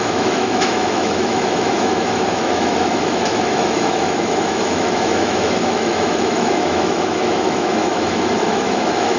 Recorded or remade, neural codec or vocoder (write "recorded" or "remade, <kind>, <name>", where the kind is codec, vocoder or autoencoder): remade, autoencoder, DAC-VAE